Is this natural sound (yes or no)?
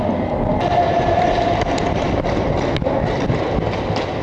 yes